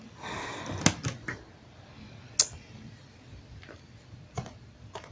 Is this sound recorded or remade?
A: recorded